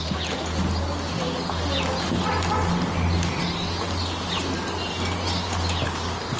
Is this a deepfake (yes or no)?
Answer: no